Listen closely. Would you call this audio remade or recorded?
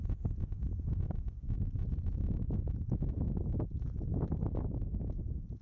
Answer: remade